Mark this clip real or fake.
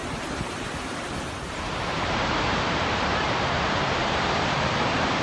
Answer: fake